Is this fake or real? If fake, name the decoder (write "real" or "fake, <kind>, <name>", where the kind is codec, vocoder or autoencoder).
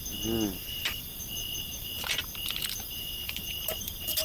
real